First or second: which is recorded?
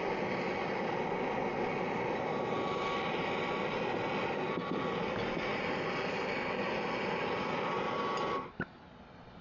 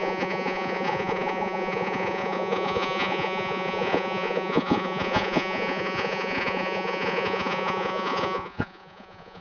first